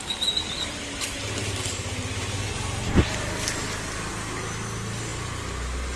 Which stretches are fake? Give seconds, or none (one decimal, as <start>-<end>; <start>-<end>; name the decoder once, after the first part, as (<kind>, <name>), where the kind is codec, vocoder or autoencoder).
none